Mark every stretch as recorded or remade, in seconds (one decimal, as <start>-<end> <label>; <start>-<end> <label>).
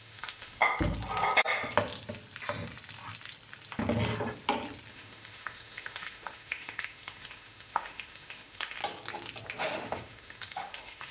0.0-0.6 remade; 0.6-4.9 recorded; 4.9-8.8 remade; 8.8-9.6 recorded; 9.6-11.1 remade